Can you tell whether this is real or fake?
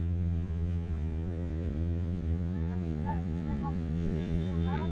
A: fake